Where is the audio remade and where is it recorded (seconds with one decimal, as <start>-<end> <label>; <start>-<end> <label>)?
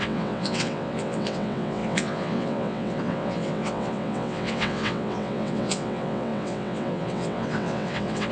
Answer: 0.0-8.3 remade